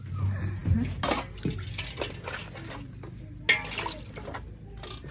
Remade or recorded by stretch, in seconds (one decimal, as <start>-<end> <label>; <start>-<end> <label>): 0.0-5.1 recorded